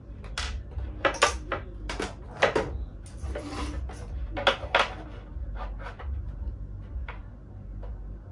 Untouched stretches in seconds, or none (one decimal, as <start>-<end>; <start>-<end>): 0.0-8.3